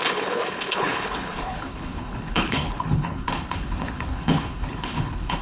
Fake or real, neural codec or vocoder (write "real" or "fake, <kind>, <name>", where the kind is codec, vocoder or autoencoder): fake, codec, HILCodec